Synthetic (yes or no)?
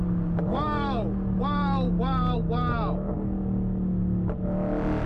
no